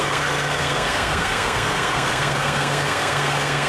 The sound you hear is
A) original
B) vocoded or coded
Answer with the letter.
B